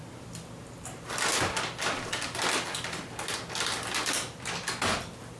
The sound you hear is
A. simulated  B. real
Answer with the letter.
B